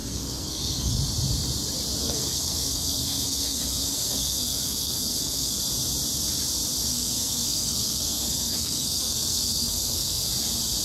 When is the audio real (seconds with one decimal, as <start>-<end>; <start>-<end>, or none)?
0.9-2.0; 5.6-6.9; 10.3-10.8